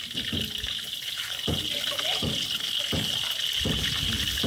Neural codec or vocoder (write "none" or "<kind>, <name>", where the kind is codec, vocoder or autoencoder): none